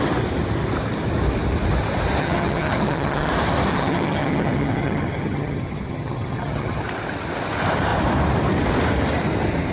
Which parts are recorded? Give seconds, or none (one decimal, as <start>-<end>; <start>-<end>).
0.0-2.2; 3.3-3.7; 6.8-9.7